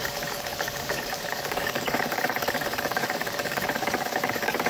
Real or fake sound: fake